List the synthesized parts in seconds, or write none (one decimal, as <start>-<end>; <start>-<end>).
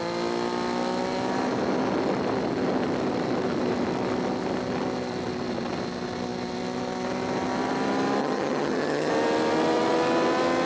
8.2-9.1